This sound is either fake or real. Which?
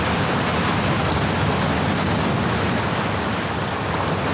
real